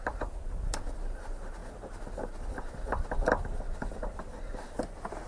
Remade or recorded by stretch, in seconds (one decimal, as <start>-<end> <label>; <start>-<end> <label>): 0.0-5.3 recorded